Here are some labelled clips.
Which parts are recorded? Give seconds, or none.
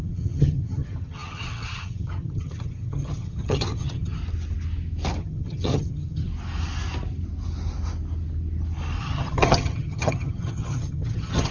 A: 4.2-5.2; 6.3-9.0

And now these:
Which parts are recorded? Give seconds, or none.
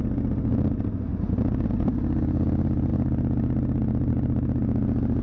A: 0.0-5.2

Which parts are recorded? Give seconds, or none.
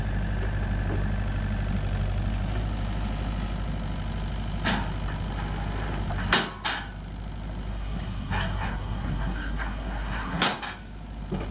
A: 0.0-7.7; 10.6-11.5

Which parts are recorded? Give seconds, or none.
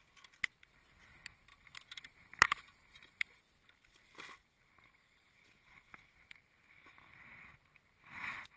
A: 0.0-1.5; 3.4-4.4; 6.4-8.6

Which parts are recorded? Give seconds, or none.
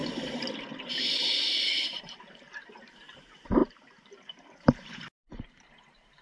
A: 1.3-1.9